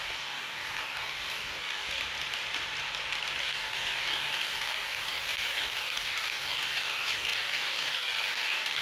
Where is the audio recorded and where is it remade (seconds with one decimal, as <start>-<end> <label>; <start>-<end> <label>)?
0.0-2.0 remade; 2.0-3.4 recorded; 3.4-8.8 remade